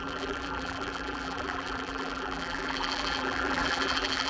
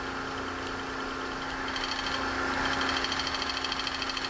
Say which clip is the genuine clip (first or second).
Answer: second